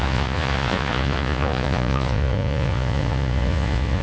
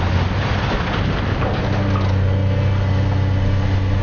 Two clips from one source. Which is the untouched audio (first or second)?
second